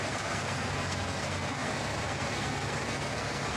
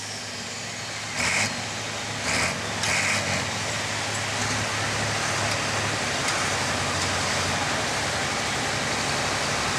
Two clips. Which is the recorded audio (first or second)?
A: second